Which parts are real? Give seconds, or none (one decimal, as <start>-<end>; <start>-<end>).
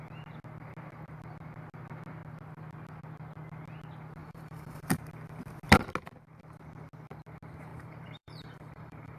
0.0-4.2; 5.0-7.7